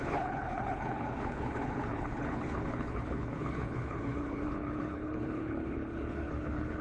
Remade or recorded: remade